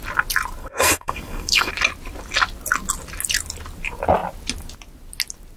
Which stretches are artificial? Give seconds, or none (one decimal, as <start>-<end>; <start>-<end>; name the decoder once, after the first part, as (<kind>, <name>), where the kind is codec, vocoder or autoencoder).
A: 0.6-1.7 (codec, SNAC)